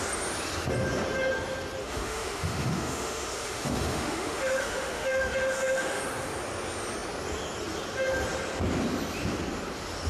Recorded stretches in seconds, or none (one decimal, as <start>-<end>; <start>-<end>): 0.0-1.8; 6.0-10.1